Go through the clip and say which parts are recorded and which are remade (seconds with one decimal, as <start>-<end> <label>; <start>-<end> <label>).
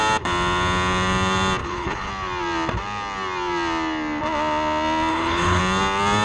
0.0-1.6 recorded; 1.6-2.1 remade; 2.1-5.1 recorded; 5.1-5.6 remade; 5.6-6.2 recorded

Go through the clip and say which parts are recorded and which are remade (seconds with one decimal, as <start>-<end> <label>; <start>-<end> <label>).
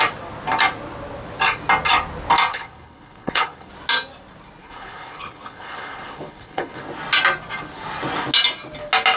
0.0-2.5 recorded; 2.5-3.7 remade; 3.7-4.6 recorded; 4.6-6.8 remade; 6.8-9.2 recorded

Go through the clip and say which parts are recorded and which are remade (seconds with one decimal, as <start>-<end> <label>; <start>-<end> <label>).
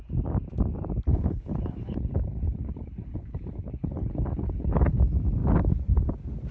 0.0-1.1 recorded; 1.1-5.0 remade; 5.0-6.5 recorded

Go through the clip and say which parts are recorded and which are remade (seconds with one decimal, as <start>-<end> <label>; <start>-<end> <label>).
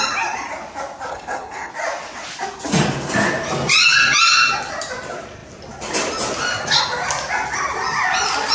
0.0-1.1 recorded; 1.1-1.7 remade; 1.7-8.5 recorded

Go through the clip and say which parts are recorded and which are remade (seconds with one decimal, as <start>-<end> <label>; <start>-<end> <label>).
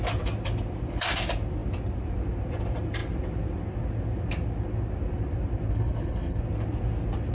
0.0-5.7 recorded; 5.7-6.4 remade; 6.4-7.3 recorded